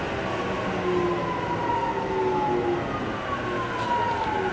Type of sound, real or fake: real